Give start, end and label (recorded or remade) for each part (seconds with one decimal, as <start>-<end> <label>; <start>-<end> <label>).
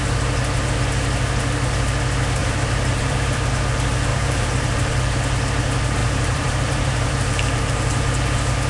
0.0-2.4 recorded; 2.4-3.5 remade; 3.5-4.1 recorded; 4.1-5.0 remade; 5.0-6.0 recorded; 6.0-8.0 remade; 8.0-8.7 recorded